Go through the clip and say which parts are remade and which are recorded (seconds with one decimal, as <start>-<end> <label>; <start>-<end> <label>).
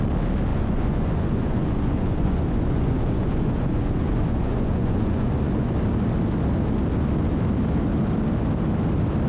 0.0-0.5 recorded; 0.5-5.7 remade; 5.7-9.3 recorded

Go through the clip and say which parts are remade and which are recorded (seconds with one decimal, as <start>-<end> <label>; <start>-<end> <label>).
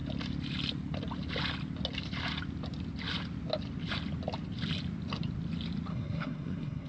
0.0-5.9 recorded; 5.9-6.9 remade